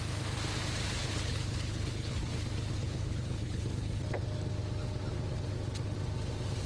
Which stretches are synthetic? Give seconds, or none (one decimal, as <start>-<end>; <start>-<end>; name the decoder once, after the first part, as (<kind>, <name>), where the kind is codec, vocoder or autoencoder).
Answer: 1.0-2.3 (codec, HILCodec); 2.8-3.9